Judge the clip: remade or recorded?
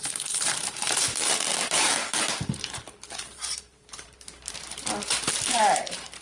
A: remade